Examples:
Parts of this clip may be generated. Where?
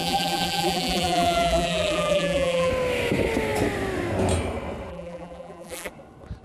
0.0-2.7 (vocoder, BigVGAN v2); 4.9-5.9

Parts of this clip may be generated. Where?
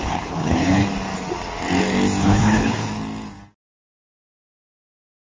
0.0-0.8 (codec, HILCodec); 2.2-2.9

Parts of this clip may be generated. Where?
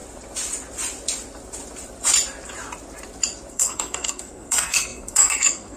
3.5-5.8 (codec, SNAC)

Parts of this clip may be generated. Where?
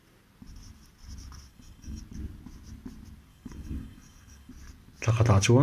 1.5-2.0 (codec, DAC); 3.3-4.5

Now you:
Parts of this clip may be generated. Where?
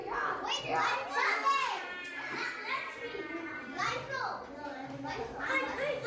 0.0-6.1 (vocoder, BigVGAN v2)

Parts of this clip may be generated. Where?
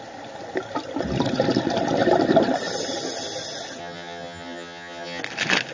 3.8-5.2 (vocoder, HiFi-GAN)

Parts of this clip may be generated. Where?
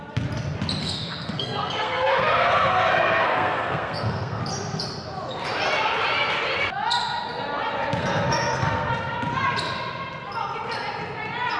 0.8-4.4 (codec, SNAC); 8.0-8.9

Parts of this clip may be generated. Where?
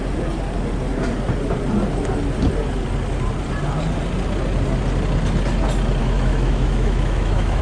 6.0-7.6 (autoencoder, DAC-VAE)